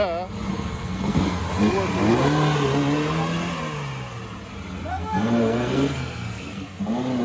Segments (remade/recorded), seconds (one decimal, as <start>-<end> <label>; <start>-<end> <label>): 0.0-0.5 recorded; 0.5-1.4 remade; 1.4-4.9 recorded; 4.9-6.8 remade; 6.8-7.2 recorded